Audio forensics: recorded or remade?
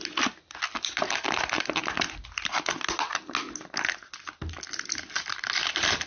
recorded